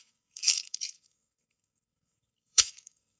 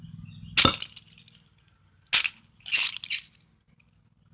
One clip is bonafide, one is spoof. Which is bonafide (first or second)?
second